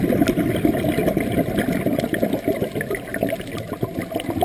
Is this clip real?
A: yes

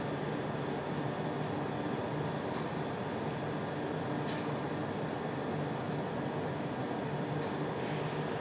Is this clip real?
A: yes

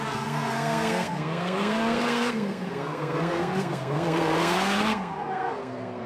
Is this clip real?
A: no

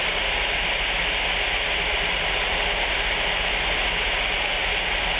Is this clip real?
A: yes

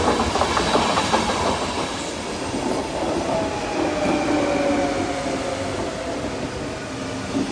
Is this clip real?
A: yes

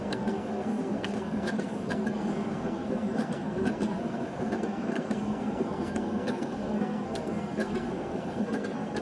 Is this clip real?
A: no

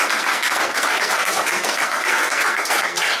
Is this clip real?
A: no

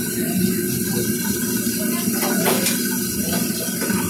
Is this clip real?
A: yes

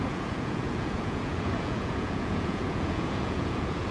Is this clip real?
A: no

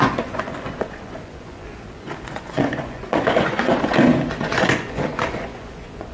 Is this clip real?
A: no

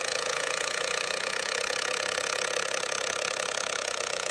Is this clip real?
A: no